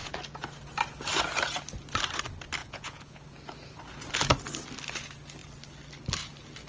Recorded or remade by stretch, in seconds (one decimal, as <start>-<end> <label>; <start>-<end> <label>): 0.0-2.6 recorded; 2.6-3.2 remade; 3.2-6.7 recorded